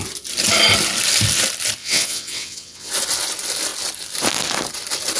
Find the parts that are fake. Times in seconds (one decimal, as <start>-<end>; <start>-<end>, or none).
1.8-2.9